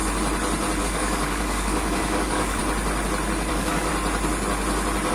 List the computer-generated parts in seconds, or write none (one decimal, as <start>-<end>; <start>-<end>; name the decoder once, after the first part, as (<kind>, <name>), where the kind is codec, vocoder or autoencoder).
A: 0.8-2.6 (codec, DAC); 3.5-3.9